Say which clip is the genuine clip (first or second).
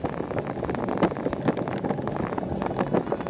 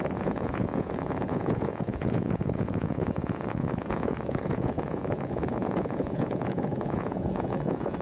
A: first